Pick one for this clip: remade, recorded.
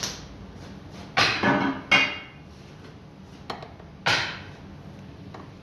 recorded